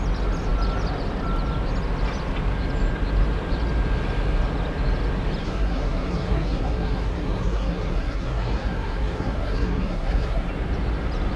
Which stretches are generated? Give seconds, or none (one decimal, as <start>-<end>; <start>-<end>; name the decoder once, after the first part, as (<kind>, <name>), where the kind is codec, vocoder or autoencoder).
5.4-10.5 (codec, SNAC)